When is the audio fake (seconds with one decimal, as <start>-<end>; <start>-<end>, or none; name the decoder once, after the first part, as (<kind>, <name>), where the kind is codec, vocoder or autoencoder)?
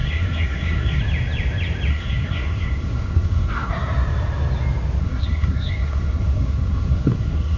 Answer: 0.0-1.0 (codec, SNAC); 1.9-3.7; 5.0-7.6